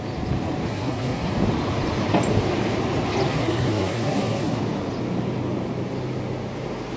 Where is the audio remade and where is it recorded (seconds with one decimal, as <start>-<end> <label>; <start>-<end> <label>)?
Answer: 0.0-0.7 recorded; 0.7-1.3 remade; 1.3-3.3 recorded; 3.3-4.6 remade; 4.6-7.0 recorded